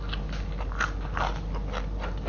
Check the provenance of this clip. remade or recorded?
recorded